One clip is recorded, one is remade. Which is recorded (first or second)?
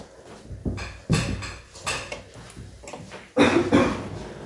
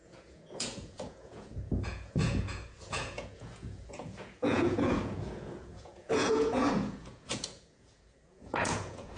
first